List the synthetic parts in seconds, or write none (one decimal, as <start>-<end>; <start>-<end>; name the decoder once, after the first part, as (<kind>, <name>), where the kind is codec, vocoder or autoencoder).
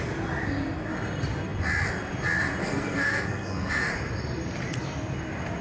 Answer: 2.6-3.8 (codec, SNAC)